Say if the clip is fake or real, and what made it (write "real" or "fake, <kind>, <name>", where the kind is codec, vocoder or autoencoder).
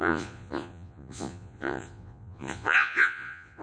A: fake, vocoder, Vocos